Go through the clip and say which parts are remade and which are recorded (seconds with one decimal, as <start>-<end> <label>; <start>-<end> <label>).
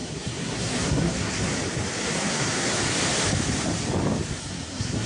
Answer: 0.0-1.5 remade; 1.5-2.0 recorded; 2.0-2.8 remade; 2.8-4.4 recorded; 4.4-5.1 remade